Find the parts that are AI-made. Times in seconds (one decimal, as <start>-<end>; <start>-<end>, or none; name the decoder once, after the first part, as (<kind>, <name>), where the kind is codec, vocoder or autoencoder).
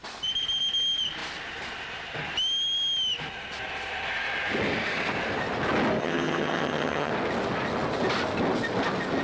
6.0-7.1 (vocoder, HiFi-GAN)